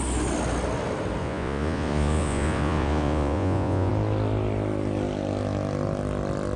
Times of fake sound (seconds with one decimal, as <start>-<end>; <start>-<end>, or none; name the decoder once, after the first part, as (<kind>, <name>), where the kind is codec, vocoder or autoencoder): 1.2-3.9 (vocoder, Vocos)

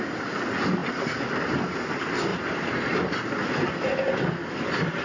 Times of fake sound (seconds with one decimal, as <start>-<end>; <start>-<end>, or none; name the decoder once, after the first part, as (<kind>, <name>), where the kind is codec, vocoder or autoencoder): none

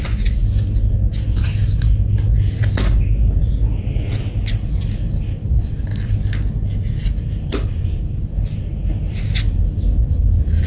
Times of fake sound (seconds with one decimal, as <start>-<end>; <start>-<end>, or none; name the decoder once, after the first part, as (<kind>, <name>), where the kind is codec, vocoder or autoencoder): none

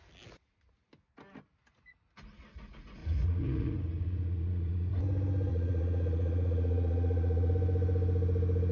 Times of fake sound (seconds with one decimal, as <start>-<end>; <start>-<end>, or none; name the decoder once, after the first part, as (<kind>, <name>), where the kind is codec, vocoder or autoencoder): 3.0-4.9 (vocoder, Vocos); 5.5-7.5